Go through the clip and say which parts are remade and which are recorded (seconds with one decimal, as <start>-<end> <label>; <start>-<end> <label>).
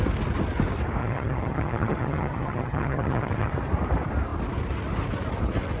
0.0-1.0 recorded; 1.0-3.5 remade; 3.5-5.8 recorded